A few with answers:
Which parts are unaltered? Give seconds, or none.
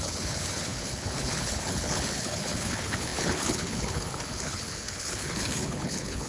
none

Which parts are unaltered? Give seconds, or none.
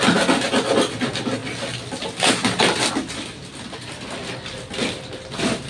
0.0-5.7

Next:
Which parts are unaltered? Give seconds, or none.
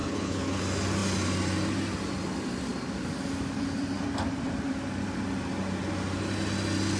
0.6-7.0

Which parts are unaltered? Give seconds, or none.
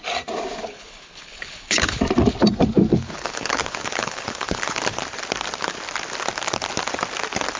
0.0-0.6; 2.0-2.9; 4.8-7.6